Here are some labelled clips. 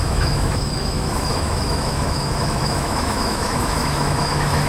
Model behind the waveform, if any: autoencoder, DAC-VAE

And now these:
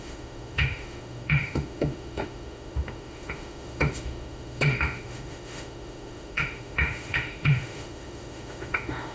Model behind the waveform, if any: autoencoder, DAC-VAE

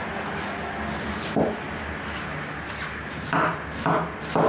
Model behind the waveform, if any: none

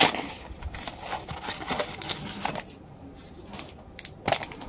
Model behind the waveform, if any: none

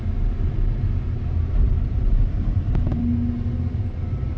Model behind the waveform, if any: none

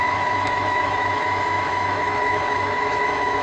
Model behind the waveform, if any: autoencoder, DAC-VAE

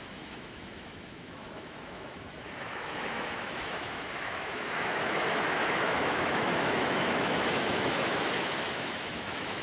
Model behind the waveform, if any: autoencoder, DAC-VAE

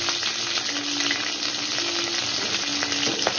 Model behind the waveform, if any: none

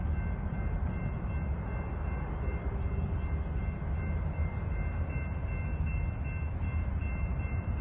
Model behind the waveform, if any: none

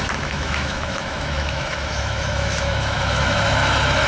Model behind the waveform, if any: autoencoder, DAC-VAE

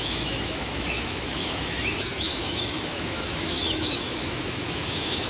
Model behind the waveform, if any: autoencoder, DAC-VAE